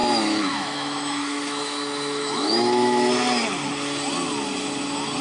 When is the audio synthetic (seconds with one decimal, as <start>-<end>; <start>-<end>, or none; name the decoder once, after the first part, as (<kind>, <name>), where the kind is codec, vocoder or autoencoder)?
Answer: 0.0-3.1 (autoencoder, DAC-VAE)